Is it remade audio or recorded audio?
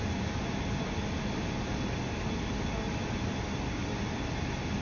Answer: recorded